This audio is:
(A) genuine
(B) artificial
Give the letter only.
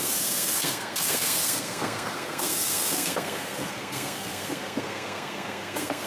B